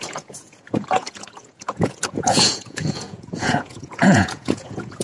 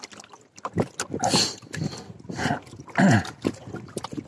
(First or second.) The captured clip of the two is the second